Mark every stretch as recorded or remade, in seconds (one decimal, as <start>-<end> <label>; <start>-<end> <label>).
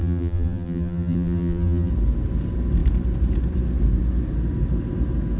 0.0-1.9 remade; 1.9-5.4 recorded